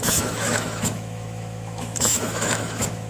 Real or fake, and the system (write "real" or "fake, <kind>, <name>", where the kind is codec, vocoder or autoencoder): fake, autoencoder, DAC-VAE